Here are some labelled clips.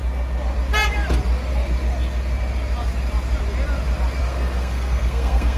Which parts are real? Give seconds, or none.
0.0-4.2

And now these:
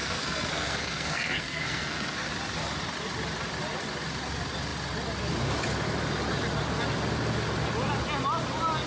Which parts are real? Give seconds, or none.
2.3-8.9

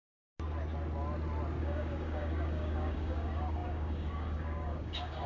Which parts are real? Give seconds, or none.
0.0-1.6

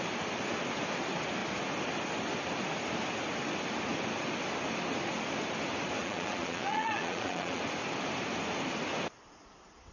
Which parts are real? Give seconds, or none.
0.0-6.0; 7.6-9.9

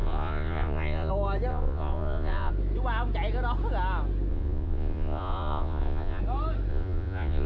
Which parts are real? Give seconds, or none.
1.1-1.5; 2.5-4.3; 6.2-6.7